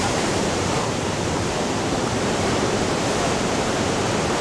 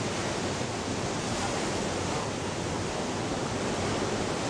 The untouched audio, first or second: second